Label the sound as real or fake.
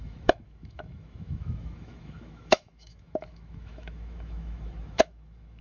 fake